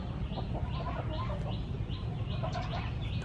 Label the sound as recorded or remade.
recorded